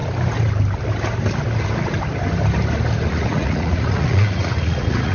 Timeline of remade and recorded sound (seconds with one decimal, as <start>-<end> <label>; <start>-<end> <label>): 0.0-3.1 recorded; 3.1-5.1 remade